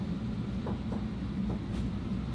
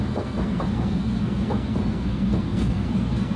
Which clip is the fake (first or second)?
second